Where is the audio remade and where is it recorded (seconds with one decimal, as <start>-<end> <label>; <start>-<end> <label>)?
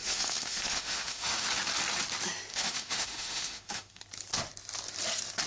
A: 0.0-1.5 remade; 1.5-2.5 recorded; 2.5-4.0 remade; 4.0-5.5 recorded